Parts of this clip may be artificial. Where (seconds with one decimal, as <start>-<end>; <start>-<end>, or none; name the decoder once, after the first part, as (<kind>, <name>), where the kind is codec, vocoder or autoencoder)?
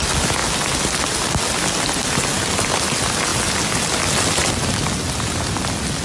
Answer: none